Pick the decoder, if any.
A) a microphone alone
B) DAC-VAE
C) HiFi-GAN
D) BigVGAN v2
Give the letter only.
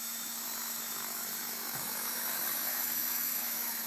B